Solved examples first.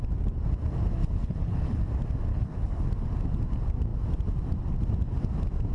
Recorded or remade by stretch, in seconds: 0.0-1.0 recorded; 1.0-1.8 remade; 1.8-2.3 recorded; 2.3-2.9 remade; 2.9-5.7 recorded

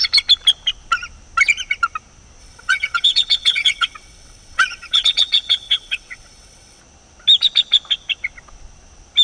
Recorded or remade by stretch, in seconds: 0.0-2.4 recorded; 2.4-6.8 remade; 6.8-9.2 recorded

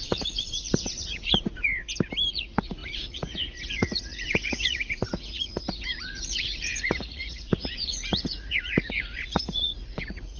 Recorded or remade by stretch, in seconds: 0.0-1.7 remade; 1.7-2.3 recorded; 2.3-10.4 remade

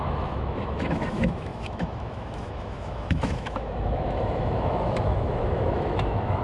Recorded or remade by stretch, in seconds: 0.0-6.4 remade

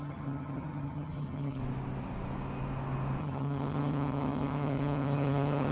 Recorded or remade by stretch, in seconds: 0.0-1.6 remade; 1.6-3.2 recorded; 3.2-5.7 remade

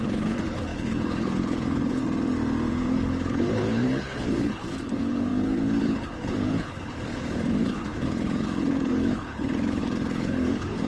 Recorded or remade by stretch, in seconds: 0.0-2.0 remade; 2.0-2.7 recorded; 2.7-10.9 remade

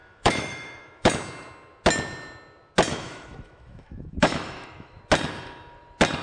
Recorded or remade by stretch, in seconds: 0.0-1.1 remade; 1.1-2.9 recorded; 2.9-5.0 remade; 5.0-6.2 recorded